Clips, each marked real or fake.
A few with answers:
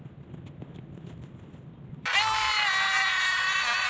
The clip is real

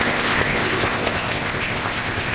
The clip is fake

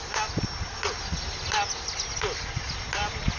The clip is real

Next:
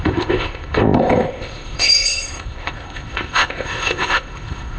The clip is fake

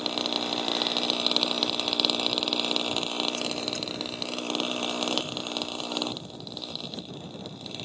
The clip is real